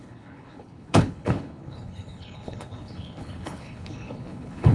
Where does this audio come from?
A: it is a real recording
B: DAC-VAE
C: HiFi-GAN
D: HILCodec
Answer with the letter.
D